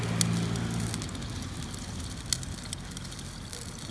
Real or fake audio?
real